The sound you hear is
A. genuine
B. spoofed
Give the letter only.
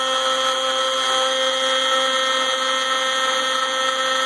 A